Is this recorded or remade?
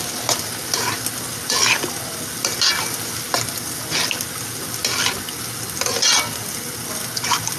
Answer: recorded